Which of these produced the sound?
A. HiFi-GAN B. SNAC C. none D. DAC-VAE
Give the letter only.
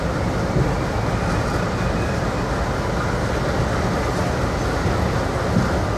C